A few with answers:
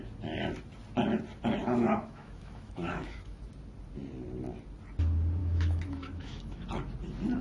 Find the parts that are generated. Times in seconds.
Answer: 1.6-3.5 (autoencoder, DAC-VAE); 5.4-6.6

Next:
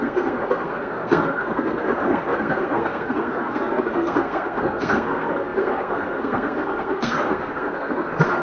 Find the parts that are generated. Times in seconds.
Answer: 0.0-8.4 (codec, SNAC)

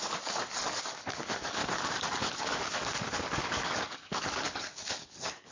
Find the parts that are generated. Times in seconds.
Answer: 0.0-1.6 (codec, DAC); 2.2-5.5

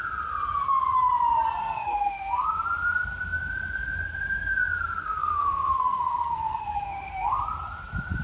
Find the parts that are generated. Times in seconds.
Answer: 1.6-2.6 (codec, SNAC); 5.0-7.4

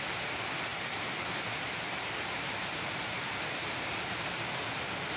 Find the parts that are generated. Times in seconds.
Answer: 0.7-3.8 (vocoder, BigVGAN v2)